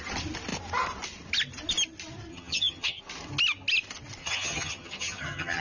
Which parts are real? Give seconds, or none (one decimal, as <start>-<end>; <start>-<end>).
0.0-2.3; 3.0-4.2